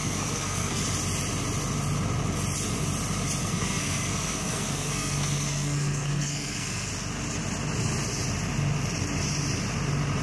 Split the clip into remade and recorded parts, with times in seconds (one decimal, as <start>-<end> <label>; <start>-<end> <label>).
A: 0.0-0.8 remade; 0.8-3.4 recorded; 3.4-6.9 remade; 6.9-10.2 recorded